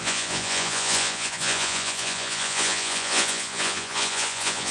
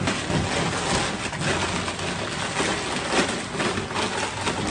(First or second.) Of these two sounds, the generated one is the first